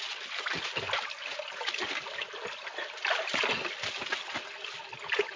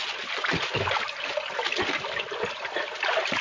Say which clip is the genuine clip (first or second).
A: first